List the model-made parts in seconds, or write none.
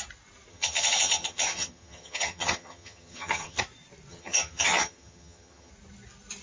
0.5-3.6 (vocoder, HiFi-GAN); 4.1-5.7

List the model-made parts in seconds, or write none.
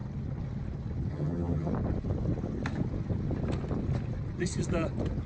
1.1-1.7 (vocoder, HiFi-GAN)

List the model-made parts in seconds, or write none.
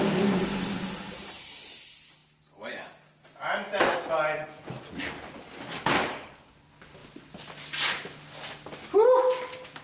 none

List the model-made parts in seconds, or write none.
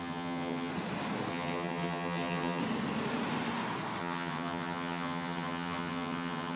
0.0-0.7 (vocoder, HiFi-GAN); 1.3-2.6; 4.0-6.6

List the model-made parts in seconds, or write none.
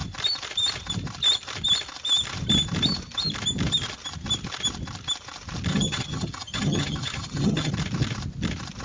5.7-7.7 (vocoder, HiFi-GAN)